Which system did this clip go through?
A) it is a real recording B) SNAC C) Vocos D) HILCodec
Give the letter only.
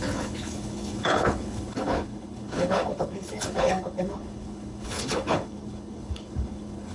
D